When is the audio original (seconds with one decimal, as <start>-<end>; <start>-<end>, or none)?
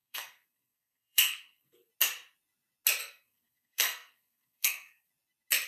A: 1.9-3.0; 5.1-5.7